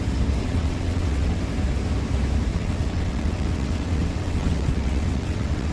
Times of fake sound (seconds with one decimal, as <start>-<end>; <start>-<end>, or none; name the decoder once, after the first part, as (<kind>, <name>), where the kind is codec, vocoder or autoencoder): 0.4-1.4 (vocoder, WaveNeXt); 2.5-5.7